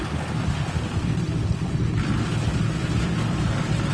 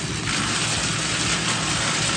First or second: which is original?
second